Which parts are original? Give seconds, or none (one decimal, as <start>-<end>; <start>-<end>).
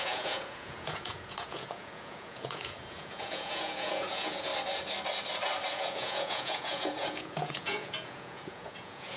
4.5-5.7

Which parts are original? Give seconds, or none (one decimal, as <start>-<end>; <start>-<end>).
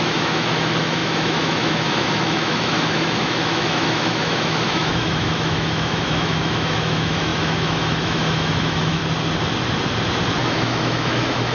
9.0-10.4